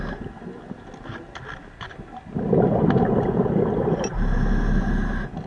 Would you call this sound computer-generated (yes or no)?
no